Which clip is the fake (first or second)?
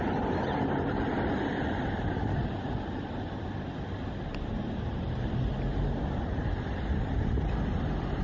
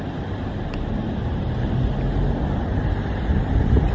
first